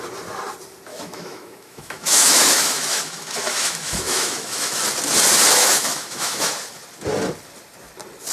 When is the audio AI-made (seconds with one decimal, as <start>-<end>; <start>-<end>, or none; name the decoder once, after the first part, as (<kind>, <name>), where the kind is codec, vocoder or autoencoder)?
0.9-4.8 (autoencoder, DAC-VAE); 5.5-6.5